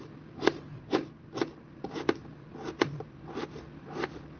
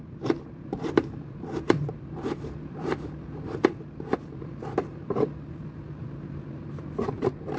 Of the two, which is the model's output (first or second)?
second